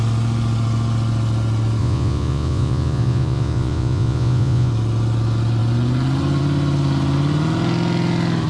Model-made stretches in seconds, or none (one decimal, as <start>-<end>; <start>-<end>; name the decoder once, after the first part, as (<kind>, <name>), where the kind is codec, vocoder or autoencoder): 1.8-4.7 (vocoder, Vocos)